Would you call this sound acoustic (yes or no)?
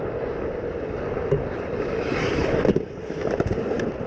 yes